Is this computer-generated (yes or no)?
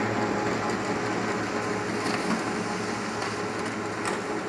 no